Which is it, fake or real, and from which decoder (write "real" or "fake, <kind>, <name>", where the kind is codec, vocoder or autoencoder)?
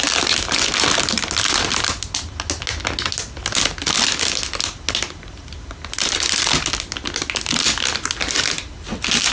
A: real